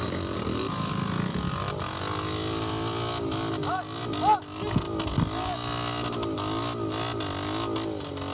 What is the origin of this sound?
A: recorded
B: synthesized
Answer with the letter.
A